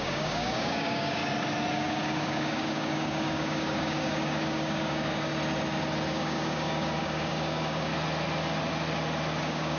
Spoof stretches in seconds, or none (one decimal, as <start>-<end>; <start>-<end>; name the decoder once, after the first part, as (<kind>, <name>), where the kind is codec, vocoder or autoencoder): 0.0-1.2 (codec, DAC); 1.7-5.3; 6.1-7.9; 9.4-9.8